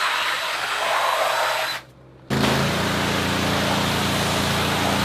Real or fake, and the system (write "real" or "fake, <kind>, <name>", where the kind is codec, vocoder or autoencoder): real